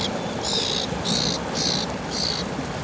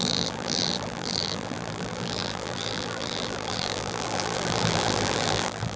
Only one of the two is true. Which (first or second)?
first